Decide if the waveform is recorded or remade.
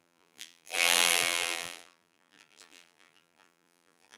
remade